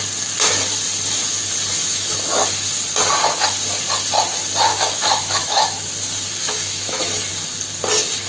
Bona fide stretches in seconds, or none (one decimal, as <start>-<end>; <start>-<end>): 0.0-1.8; 2.5-4.7; 5.9-6.4; 7.3-8.3